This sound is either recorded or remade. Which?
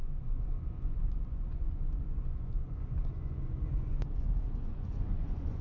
remade